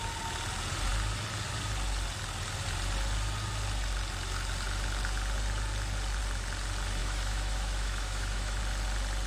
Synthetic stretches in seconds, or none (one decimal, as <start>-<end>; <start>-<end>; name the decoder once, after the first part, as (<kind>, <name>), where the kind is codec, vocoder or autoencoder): 7.0-8.6 (autoencoder, DAC-VAE)